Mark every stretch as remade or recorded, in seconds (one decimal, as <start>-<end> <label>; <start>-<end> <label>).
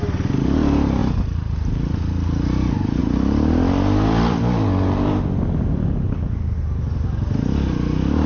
0.0-8.3 recorded